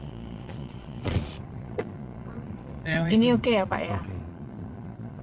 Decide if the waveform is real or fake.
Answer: fake